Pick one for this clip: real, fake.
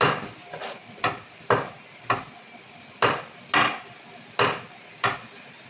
real